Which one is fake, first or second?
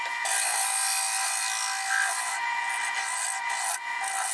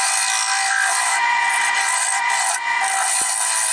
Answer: second